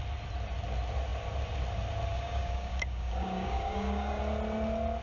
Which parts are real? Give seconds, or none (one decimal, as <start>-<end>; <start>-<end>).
0.0-2.1; 4.2-5.0